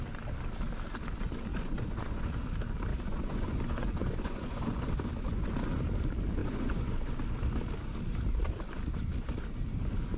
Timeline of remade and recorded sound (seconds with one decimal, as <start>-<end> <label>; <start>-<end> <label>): 0.0-1.5 recorded; 1.5-2.3 remade; 2.3-2.9 recorded; 2.9-5.5 remade; 5.5-6.4 recorded; 6.4-7.1 remade; 7.1-10.2 recorded